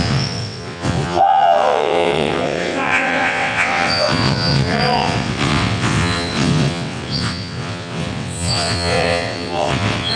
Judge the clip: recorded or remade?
remade